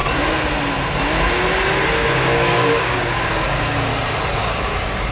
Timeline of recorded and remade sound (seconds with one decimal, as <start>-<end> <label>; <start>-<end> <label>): 0.0-1.9 recorded; 1.9-3.9 remade; 3.9-4.4 recorded; 4.4-5.1 remade